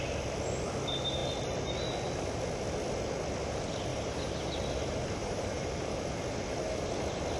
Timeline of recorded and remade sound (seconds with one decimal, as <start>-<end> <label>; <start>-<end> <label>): 0.0-3.9 recorded; 3.9-4.5 remade; 4.5-5.2 recorded; 5.2-6.1 remade; 6.1-7.4 recorded